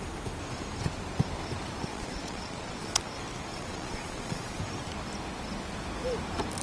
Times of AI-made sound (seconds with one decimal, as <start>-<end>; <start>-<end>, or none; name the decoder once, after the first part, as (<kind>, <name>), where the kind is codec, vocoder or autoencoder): 1.9-3.0 (vocoder, Vocos); 3.5-4.6